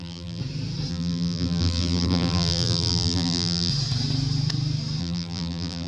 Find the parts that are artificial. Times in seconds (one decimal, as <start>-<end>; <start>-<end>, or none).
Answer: 0.0-0.4; 0.9-3.7; 5.0-5.9